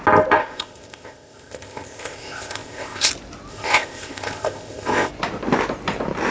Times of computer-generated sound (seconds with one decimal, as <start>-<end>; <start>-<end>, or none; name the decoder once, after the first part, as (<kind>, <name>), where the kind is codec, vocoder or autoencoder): 0.4-3.1 (codec, ZipCodec); 3.5-5.1